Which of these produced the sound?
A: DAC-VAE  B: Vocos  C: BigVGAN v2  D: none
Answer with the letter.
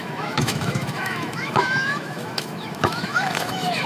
A